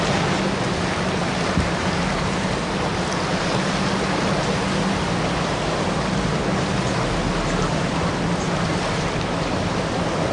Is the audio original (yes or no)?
yes